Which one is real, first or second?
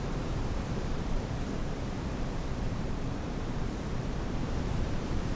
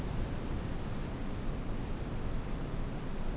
second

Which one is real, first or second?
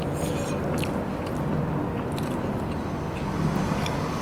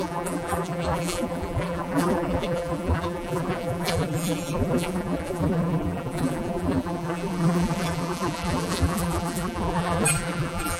first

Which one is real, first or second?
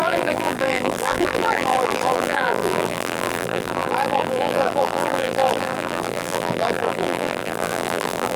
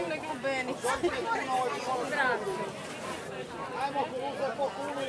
second